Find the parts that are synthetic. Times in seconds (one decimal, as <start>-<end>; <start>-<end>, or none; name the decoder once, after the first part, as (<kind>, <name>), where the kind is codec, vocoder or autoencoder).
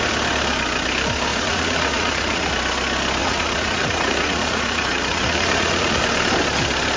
1.3-2.5 (vocoder, Vocos); 3.2-6.0